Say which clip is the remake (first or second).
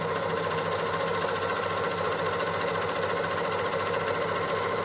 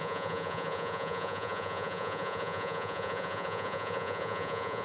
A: second